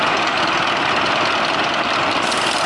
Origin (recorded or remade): recorded